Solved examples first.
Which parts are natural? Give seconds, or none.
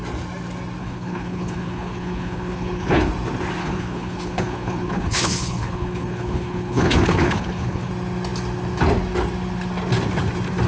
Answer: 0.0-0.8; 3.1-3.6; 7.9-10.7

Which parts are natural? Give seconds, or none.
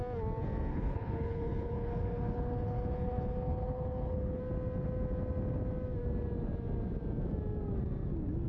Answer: 0.0-0.7; 4.4-8.5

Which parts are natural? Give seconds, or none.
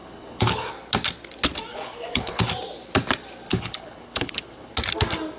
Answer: 0.7-1.7; 2.4-3.5; 4.7-5.4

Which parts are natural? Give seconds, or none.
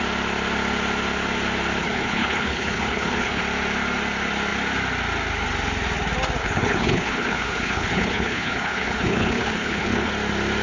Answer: 0.0-1.8; 3.4-6.4; 10.1-10.6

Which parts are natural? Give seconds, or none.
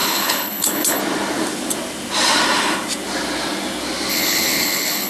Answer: 1.0-4.1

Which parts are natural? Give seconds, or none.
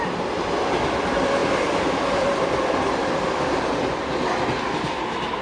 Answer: 0.0-5.4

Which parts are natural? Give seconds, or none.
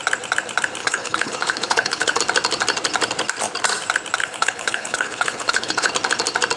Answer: 0.0-0.8; 2.2-4.2; 5.9-6.6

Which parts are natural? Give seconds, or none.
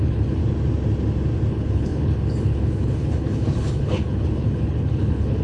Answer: 0.4-1.5